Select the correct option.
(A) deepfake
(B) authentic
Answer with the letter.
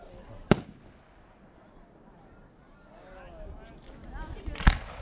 B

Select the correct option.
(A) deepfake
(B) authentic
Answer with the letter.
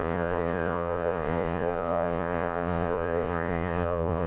A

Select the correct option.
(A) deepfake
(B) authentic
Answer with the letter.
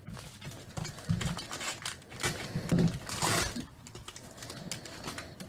B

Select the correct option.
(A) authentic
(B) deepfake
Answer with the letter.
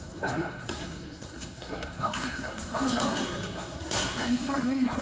B